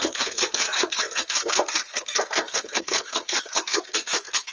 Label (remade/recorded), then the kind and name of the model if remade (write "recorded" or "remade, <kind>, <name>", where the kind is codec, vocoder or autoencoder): remade, codec, SNAC